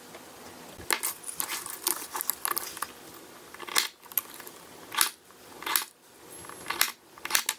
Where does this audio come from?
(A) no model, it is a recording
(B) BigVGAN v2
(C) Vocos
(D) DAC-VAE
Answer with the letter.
A